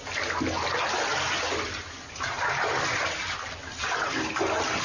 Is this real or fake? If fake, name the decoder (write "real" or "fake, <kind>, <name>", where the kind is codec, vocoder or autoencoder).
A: real